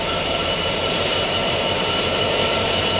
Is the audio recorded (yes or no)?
no